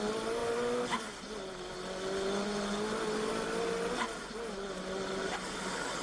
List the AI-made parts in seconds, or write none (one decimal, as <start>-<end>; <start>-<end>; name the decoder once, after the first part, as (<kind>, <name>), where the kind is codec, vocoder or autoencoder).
none

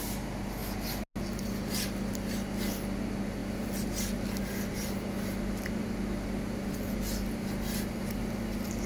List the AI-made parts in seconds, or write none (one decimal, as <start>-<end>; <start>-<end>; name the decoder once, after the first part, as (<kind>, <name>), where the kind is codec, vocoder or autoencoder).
none

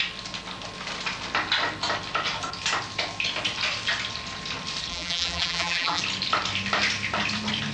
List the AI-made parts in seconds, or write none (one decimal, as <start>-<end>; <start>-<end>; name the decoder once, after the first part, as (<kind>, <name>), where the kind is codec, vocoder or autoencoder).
4.9-6.0 (vocoder, BigVGAN v2)

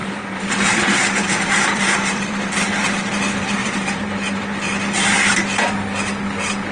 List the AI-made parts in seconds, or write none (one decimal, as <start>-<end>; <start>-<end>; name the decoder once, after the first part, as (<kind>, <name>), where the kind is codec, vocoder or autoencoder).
0.0-3.1 (vocoder, BigVGAN v2); 3.6-4.4

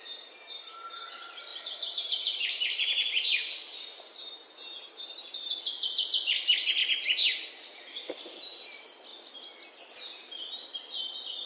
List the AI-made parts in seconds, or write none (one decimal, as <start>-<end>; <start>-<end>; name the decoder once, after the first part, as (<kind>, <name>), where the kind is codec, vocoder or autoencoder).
1.5-4.9 (vocoder, BigVGAN v2)